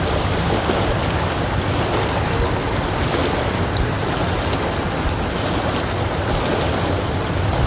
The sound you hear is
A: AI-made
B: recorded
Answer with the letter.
B